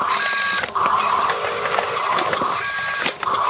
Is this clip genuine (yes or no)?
yes